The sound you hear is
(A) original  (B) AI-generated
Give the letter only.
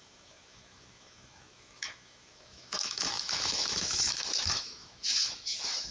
B